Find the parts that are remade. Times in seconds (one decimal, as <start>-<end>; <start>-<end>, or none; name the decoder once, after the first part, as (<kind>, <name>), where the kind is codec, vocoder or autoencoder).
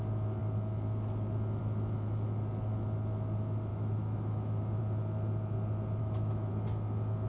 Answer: 3.7-4.8 (autoencoder, DAC-VAE); 6.0-6.5